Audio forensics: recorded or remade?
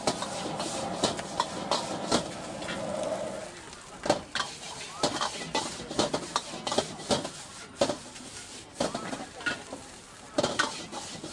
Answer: recorded